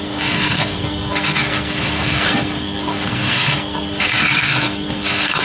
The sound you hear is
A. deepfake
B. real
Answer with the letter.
A